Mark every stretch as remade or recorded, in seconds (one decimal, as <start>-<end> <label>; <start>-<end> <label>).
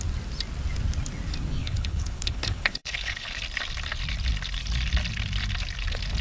0.0-1.6 recorded; 1.6-3.4 remade; 3.4-6.2 recorded